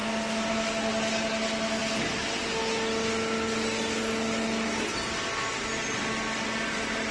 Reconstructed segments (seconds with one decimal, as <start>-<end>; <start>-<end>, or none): none